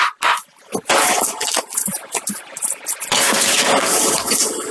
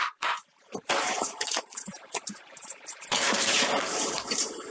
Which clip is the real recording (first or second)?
first